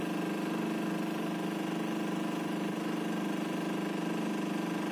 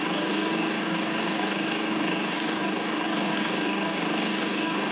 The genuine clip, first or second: first